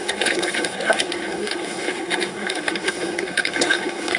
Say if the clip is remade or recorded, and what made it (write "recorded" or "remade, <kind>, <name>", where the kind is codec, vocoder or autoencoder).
remade, codec, SNAC